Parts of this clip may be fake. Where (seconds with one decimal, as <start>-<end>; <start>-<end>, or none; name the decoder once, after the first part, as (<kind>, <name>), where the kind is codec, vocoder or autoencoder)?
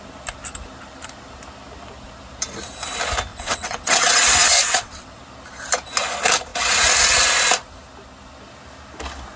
3.3-5.2 (vocoder, WaveNeXt)